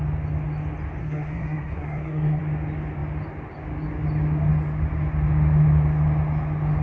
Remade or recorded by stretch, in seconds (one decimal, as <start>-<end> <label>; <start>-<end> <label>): 0.0-1.0 recorded; 1.0-2.4 remade; 2.4-6.8 recorded